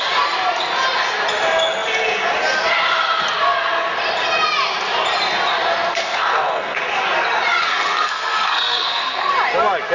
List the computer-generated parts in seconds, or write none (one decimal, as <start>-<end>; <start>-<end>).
5.9-6.8; 7.6-9.3